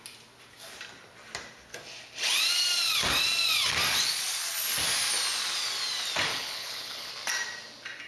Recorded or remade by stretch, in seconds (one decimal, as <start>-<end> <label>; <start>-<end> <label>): 0.0-6.3 recorded; 6.3-7.1 remade; 7.1-8.1 recorded